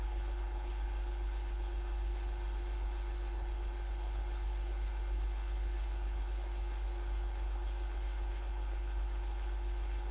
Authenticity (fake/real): fake